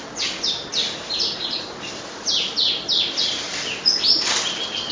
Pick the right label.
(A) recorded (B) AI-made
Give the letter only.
A